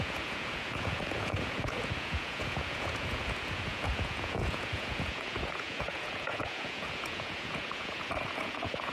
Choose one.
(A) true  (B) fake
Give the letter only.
B